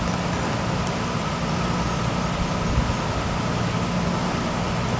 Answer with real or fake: real